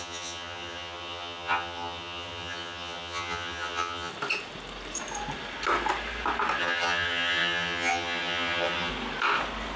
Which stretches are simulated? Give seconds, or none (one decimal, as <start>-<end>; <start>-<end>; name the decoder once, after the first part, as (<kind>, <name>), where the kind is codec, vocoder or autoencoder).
0.0-4.1 (vocoder, HiFi-GAN); 6.6-8.9